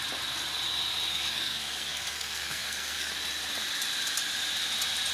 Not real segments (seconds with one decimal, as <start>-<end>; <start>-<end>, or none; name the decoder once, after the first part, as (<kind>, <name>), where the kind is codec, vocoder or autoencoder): 1.1-3.1 (codec, SNAC)